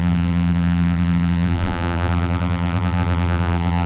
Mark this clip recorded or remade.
remade